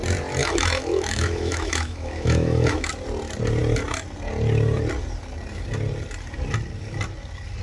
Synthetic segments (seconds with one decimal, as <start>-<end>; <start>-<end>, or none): 0.4-2.9